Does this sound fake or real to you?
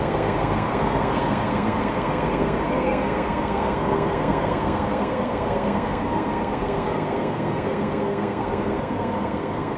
fake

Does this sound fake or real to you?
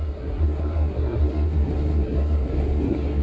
fake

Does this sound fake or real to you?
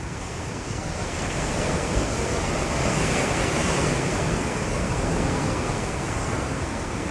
fake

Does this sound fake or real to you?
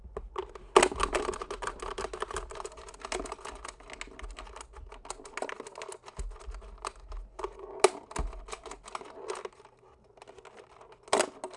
real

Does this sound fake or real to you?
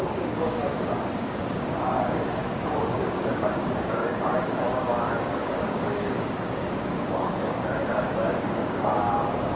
fake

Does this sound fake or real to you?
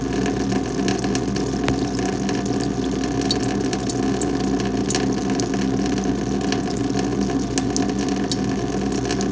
real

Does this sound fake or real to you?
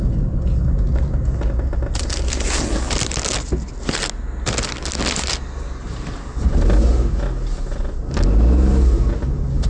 real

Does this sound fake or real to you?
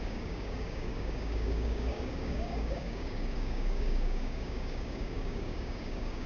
fake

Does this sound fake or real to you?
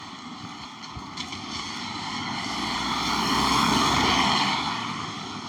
fake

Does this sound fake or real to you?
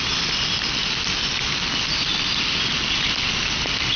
real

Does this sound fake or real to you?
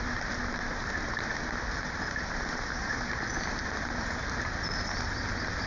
real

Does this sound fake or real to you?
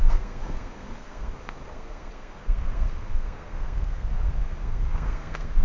fake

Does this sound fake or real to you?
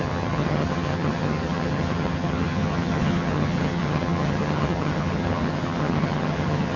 fake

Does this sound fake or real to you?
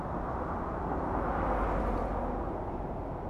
real